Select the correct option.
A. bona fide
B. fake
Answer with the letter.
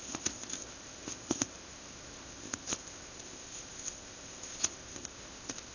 B